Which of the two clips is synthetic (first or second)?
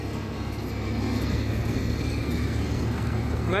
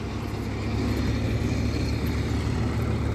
first